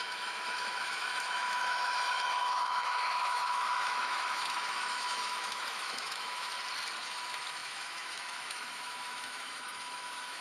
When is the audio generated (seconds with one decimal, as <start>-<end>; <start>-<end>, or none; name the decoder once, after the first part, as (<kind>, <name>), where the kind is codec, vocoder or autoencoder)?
0.0-6.5 (autoencoder, DAC-VAE); 7.0-10.4